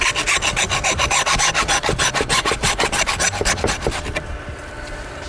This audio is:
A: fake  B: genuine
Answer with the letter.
B